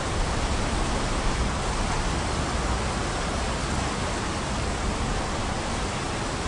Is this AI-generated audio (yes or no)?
no